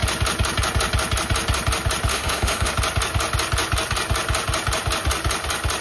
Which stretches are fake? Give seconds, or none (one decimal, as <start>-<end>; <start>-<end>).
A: 2.1-2.7